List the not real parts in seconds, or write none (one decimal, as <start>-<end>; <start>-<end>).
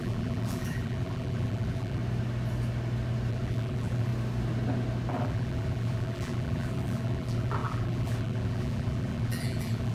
0.0-2.0; 3.3-4.1; 5.1-9.9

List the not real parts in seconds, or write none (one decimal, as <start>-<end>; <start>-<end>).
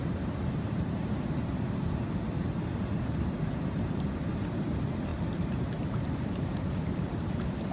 0.0-7.7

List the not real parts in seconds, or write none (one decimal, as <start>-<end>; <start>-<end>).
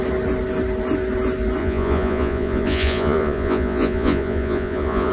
1.6-5.1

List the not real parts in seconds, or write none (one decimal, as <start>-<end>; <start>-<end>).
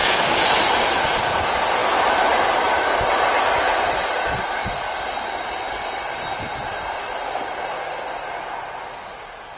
0.0-0.6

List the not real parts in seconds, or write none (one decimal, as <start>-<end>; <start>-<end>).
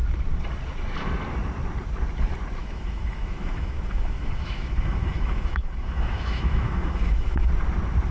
2.6-7.5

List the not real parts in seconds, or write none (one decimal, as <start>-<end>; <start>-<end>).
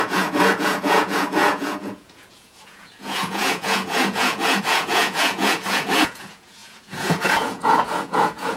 0.0-8.6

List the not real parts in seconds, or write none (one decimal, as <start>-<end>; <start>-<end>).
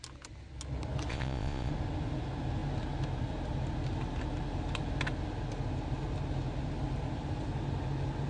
1.1-1.7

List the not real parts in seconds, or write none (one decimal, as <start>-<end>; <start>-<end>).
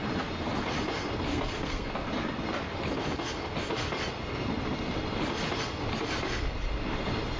1.3-1.9